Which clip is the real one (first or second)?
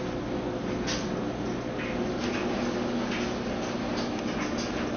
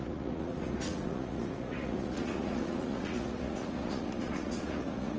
first